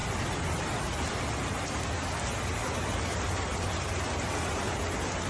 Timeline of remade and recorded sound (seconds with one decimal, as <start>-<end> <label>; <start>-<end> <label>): 0.0-1.3 remade; 1.3-5.3 recorded